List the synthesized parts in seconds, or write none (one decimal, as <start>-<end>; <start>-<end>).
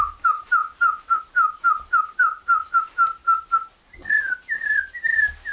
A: none